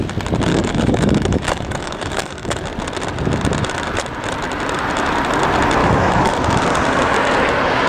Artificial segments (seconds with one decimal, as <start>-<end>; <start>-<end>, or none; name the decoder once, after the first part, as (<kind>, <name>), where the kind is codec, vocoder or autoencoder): 0.5-2.6 (codec, DAC); 5.8-6.3